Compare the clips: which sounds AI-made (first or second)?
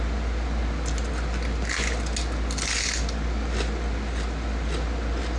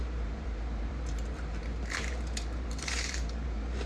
second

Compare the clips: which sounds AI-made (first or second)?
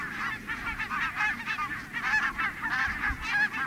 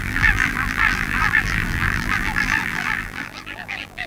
second